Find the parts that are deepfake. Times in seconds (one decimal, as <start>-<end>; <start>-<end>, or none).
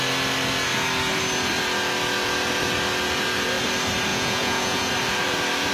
4.1-4.9